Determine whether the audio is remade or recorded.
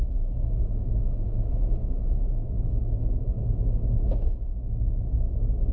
remade